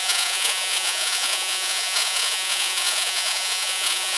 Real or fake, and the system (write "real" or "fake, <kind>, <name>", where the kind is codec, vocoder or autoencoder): fake, vocoder, Vocos